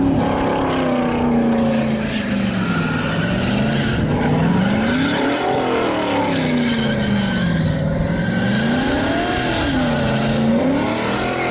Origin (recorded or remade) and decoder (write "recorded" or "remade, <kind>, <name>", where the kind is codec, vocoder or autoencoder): recorded